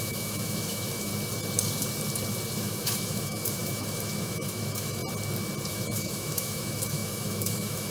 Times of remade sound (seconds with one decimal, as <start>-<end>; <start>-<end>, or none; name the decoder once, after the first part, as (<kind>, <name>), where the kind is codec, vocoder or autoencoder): 0.0-1.1 (autoencoder, DAC-VAE); 2.6-5.0; 5.7-7.9